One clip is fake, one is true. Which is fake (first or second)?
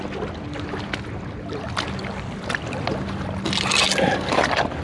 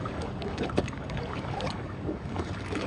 second